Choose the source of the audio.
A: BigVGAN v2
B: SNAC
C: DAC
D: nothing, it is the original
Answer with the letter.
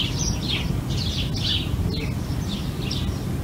D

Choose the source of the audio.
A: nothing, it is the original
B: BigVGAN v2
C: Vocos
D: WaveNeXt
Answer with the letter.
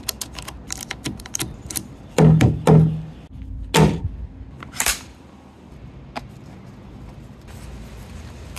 A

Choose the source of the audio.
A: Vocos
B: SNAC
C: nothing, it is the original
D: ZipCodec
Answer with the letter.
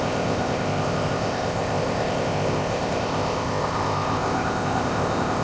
D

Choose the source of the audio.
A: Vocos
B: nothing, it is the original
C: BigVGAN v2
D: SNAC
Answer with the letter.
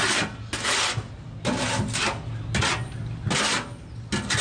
B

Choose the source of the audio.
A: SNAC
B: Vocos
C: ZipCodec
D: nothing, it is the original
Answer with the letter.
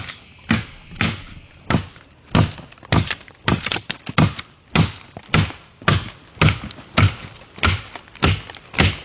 D